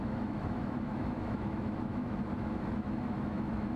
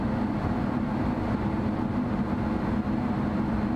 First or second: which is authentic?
second